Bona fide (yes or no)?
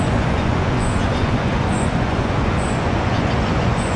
no